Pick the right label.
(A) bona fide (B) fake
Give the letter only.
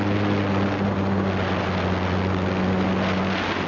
A